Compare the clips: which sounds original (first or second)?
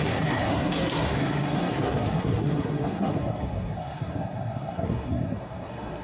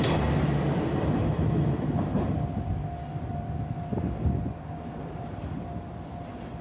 second